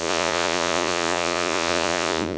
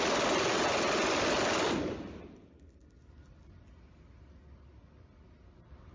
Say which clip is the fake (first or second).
first